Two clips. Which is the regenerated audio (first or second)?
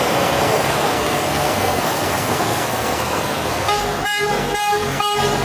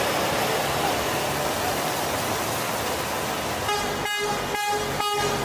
first